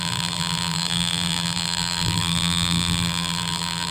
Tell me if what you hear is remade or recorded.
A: remade